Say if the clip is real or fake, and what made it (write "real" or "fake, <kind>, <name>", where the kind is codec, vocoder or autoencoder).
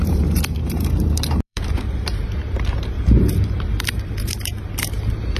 fake, vocoder, BigVGAN v2